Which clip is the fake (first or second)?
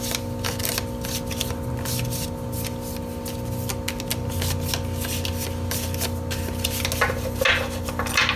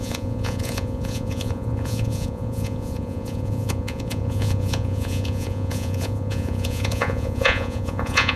second